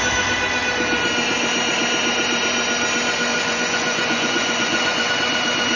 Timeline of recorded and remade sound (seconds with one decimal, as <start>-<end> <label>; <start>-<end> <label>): 0.0-3.3 recorded; 3.3-5.1 remade; 5.1-5.8 recorded